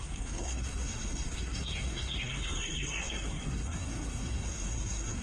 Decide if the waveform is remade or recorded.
remade